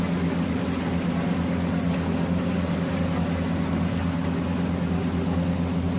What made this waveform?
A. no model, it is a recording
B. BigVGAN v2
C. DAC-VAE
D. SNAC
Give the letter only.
A